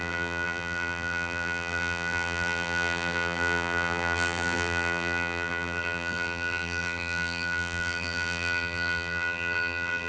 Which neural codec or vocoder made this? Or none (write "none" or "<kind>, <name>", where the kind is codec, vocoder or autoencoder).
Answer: vocoder, BigVGAN v2